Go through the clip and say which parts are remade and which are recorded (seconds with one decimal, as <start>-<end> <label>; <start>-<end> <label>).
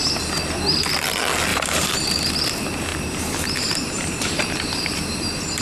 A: 0.0-1.5 recorded; 1.5-2.3 remade; 2.3-2.9 recorded; 2.9-5.6 remade